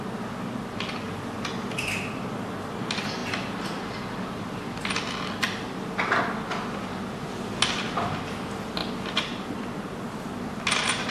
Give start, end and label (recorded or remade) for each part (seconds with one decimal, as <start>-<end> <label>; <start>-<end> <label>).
0.0-11.1 recorded